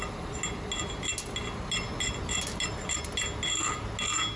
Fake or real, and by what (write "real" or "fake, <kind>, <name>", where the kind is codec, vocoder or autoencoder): real